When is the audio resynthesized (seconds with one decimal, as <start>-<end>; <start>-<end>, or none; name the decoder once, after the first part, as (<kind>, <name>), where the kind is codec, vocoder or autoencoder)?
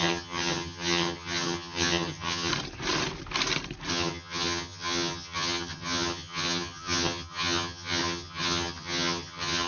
0.0-2.5 (vocoder, HiFi-GAN); 3.9-9.7